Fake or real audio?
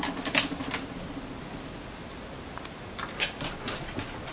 real